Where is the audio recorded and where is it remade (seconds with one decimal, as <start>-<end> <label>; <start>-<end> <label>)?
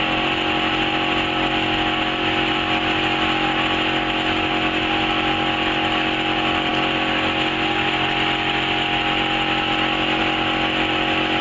0.0-11.4 recorded